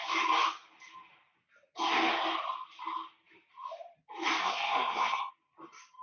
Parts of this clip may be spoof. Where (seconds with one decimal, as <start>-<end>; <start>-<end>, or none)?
4.4-5.3